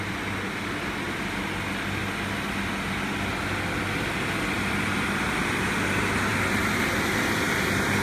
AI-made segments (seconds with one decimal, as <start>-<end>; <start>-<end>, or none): none

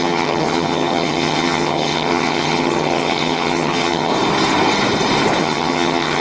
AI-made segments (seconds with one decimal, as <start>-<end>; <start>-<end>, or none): 0.0-4.1; 5.4-6.2

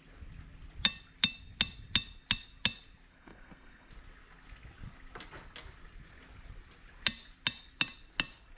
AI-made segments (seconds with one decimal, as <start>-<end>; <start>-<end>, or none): 3.1-3.9

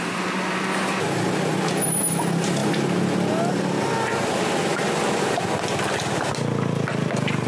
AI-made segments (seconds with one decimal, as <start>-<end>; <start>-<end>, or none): none

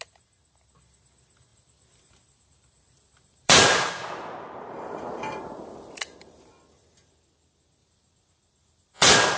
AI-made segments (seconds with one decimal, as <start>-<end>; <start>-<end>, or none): 1.5-6.5; 7.8-9.4

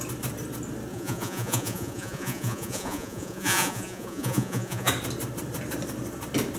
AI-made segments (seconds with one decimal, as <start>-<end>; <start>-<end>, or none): 0.9-4.9

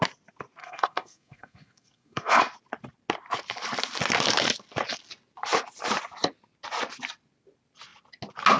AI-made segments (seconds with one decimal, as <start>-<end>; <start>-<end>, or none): 0.6-2.4

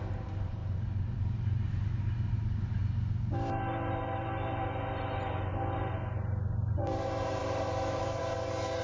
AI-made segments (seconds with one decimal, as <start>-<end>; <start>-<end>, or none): 0.0-2.8; 6.7-8.8